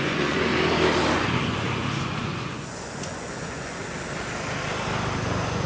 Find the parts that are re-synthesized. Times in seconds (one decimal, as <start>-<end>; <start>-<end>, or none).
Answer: 0.0-0.5; 1.1-3.8; 5.2-5.7